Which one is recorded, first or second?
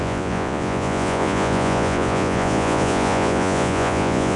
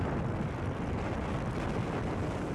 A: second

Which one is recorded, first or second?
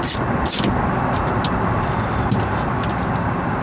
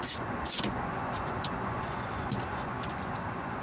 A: first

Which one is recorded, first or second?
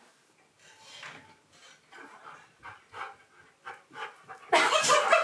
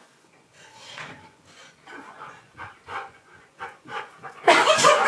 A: first